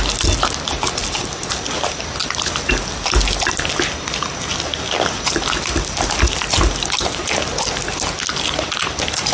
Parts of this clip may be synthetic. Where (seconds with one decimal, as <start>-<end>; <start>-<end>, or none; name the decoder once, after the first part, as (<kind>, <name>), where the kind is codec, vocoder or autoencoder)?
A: none

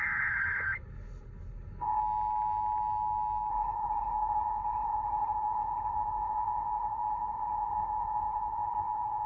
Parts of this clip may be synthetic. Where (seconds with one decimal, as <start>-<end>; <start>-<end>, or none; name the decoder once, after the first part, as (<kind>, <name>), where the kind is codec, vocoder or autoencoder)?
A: 0.0-2.0 (codec, HILCodec); 3.5-9.3

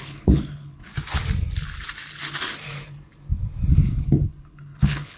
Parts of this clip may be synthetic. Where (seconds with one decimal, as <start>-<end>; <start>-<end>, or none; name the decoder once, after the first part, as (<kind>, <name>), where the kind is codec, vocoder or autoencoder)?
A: 0.0-0.9 (codec, HILCodec); 3.7-5.2

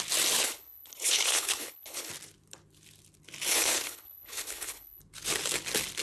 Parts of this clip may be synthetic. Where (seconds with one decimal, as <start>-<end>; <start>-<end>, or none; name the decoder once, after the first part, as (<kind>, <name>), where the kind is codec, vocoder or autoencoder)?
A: 0.4-2.1 (codec, HILCodec); 3.5-5.0